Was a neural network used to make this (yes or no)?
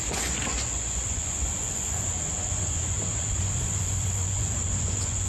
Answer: yes